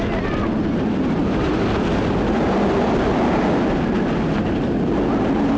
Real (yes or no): yes